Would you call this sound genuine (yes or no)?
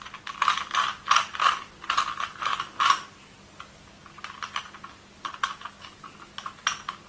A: yes